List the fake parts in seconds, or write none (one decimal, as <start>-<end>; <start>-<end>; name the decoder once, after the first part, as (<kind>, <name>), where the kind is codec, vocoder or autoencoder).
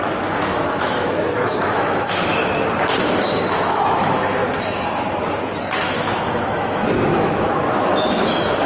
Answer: 0.0-2.3 (autoencoder, DAC-VAE); 3.2-4.4; 5.8-8.7